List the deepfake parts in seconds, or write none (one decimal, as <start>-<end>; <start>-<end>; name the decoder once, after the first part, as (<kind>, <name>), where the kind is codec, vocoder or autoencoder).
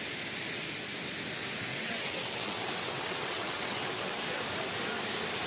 1.7-4.3 (vocoder, WaveNeXt)